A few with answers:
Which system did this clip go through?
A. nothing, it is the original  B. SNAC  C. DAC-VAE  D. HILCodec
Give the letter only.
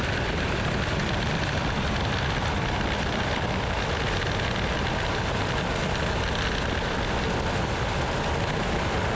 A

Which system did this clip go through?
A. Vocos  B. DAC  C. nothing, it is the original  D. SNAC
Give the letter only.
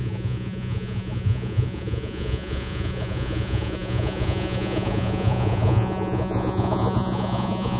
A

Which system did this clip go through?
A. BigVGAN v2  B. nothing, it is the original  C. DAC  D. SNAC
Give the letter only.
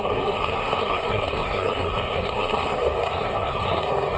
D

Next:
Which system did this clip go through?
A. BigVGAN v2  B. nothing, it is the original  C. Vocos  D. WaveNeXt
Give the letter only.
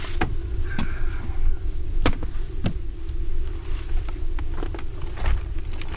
B